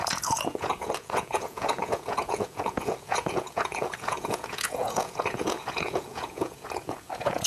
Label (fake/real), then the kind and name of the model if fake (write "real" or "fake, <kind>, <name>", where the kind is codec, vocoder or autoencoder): fake, vocoder, Vocos